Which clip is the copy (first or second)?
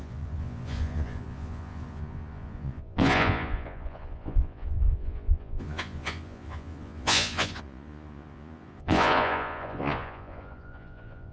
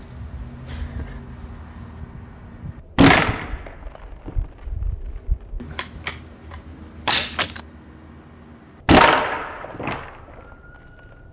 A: first